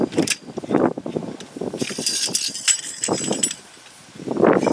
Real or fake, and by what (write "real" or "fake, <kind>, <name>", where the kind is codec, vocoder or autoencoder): real